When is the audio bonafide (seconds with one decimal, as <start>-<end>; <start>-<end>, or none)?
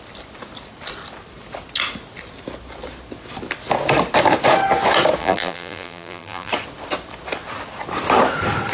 0.0-5.2; 6.5-8.7